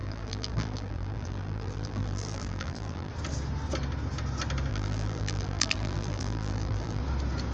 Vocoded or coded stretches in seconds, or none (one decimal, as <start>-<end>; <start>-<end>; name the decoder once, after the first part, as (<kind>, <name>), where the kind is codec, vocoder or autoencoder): 0.0-3.1 (vocoder, BigVGAN v2); 4.7-7.0